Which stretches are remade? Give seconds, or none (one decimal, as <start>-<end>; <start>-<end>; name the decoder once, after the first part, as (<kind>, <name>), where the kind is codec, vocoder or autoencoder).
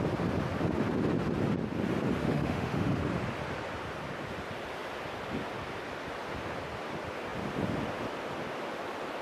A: 2.2-3.0 (autoencoder, DAC-VAE)